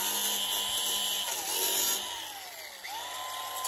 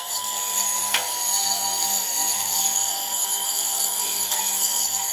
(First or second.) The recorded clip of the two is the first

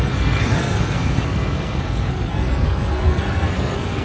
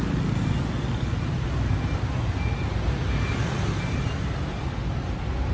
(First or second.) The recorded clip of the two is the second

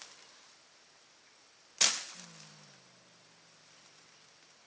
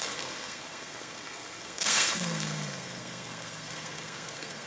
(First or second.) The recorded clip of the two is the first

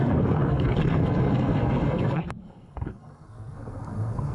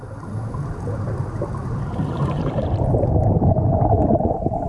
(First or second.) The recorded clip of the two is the second